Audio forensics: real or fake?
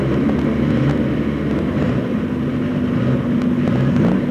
real